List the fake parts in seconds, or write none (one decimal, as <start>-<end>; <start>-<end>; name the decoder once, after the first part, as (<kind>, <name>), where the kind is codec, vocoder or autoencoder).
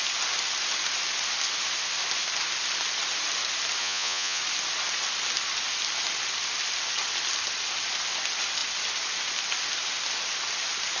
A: 3.8-4.4 (vocoder, Vocos)